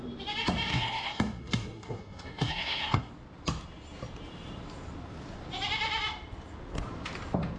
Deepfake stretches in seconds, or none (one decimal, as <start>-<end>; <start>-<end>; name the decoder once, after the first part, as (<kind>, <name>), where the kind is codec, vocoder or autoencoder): 0.7-3.1 (codec, SNAC)